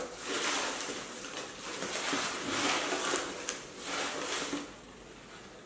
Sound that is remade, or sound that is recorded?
recorded